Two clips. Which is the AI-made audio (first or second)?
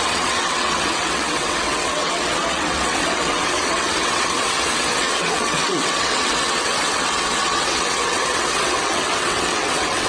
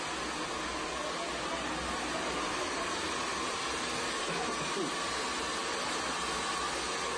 first